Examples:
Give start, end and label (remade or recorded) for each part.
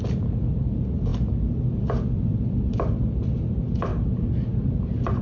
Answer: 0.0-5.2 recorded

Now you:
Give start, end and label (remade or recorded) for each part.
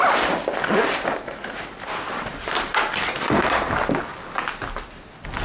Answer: 0.0-5.4 recorded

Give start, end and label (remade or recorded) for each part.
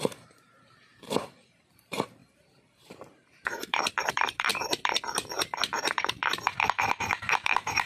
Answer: 0.0-4.5 remade; 4.5-5.6 recorded; 5.6-6.2 remade; 6.2-6.9 recorded; 6.9-7.9 remade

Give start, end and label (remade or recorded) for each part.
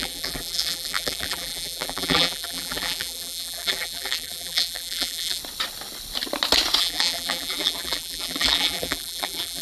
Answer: 0.0-5.4 remade; 5.4-6.8 recorded; 6.8-9.6 remade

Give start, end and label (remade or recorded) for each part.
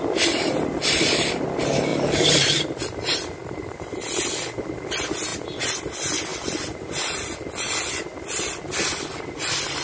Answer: 0.0-1.9 recorded; 1.9-3.0 remade; 3.0-3.4 recorded; 3.4-4.1 remade; 4.1-9.8 recorded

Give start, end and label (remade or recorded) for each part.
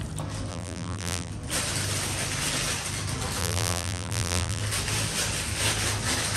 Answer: 0.0-0.5 recorded; 0.5-1.3 remade; 1.3-3.4 recorded; 3.4-4.6 remade; 4.6-6.4 recorded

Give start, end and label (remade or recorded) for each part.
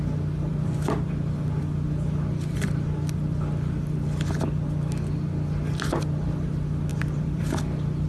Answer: 0.0-6.9 recorded; 6.9-7.4 remade; 7.4-8.1 recorded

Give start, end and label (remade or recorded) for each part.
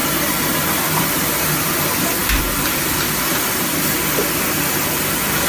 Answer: 0.0-1.4 remade; 1.4-2.2 recorded; 2.2-3.7 remade; 3.7-5.5 recorded